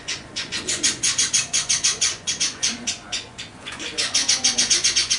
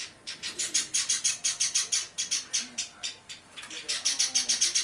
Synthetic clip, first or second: first